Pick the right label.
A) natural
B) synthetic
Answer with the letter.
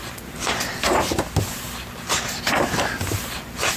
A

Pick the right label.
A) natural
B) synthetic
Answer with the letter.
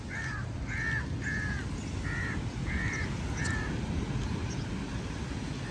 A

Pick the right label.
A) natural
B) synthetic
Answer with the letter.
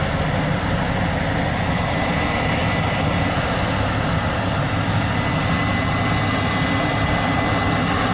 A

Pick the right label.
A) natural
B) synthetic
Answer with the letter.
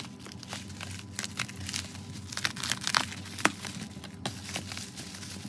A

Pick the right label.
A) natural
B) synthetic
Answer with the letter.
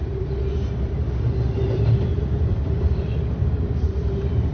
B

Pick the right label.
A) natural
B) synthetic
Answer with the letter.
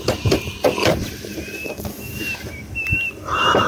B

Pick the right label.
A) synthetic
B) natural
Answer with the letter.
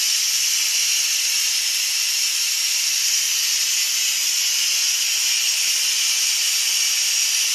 B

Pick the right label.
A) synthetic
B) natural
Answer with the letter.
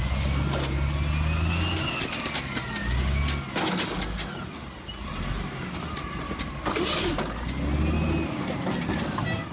B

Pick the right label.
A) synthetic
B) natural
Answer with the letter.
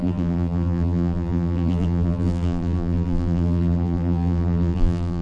A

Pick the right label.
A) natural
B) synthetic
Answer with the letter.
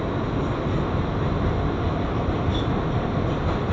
A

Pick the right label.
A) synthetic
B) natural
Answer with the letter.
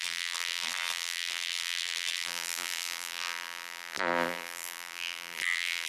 A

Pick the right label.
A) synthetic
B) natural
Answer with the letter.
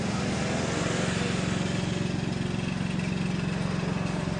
B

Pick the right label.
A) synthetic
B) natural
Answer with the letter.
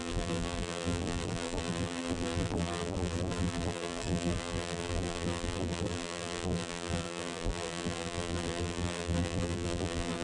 A